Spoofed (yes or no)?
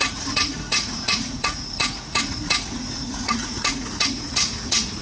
yes